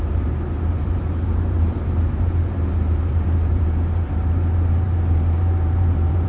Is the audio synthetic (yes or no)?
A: yes